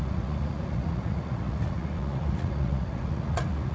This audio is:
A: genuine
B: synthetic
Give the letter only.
B